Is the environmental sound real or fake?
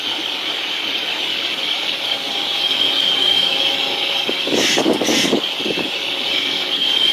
fake